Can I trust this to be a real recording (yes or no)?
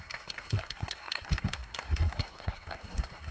no